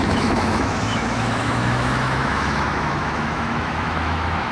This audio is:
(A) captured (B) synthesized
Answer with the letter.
B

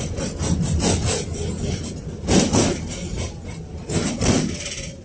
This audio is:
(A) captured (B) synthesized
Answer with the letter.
A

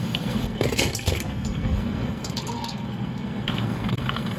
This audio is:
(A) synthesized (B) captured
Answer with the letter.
A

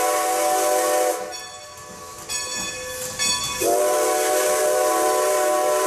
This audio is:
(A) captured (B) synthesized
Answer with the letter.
A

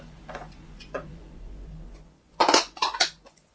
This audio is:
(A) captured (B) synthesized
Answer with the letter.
B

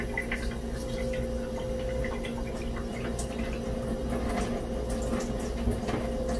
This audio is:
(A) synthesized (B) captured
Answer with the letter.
B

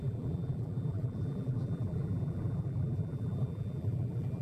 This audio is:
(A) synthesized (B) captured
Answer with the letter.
A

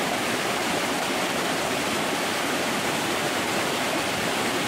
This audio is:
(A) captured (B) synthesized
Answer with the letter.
B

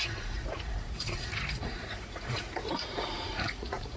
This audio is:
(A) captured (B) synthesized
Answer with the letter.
B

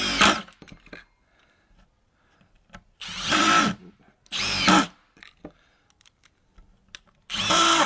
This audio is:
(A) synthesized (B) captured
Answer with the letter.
B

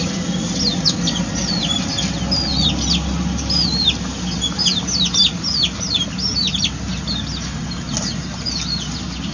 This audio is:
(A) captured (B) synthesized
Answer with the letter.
A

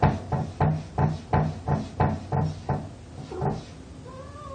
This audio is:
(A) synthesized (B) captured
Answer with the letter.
B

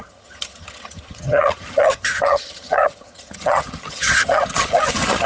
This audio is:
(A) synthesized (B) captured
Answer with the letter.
A